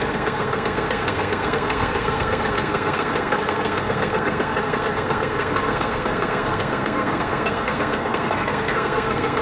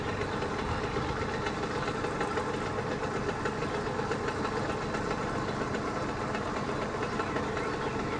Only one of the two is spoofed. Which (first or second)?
first